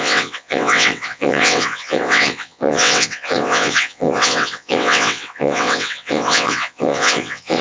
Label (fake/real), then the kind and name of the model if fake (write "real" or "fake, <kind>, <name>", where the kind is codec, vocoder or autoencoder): fake, vocoder, WaveNeXt